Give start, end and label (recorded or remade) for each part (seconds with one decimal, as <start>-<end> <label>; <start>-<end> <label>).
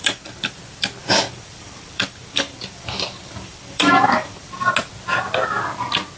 0.0-0.6 remade; 0.6-1.0 recorded; 1.0-4.7 remade; 4.7-6.2 recorded